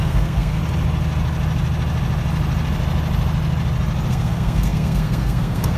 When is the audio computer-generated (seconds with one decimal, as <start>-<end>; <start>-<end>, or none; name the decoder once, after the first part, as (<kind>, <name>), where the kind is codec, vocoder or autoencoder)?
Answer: 0.0-0.6 (codec, SNAC); 4.1-5.8